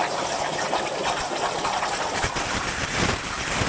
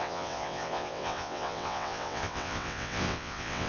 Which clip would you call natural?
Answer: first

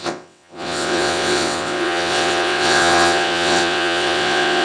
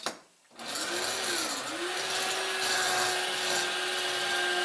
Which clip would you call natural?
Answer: second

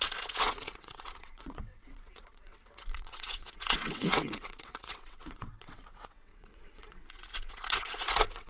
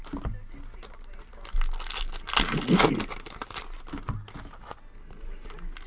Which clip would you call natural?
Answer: second